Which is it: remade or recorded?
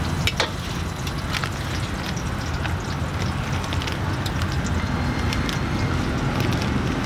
recorded